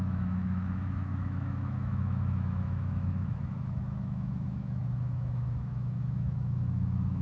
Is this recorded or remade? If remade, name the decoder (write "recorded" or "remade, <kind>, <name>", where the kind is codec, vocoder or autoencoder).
remade, autoencoder, DAC-VAE